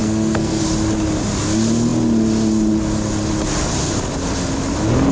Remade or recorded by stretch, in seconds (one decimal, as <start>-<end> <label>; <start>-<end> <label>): 0.0-0.6 remade; 0.6-5.1 recorded